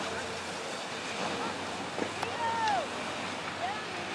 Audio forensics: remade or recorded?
recorded